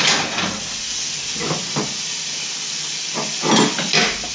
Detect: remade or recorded recorded